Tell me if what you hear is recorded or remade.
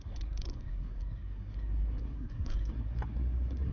remade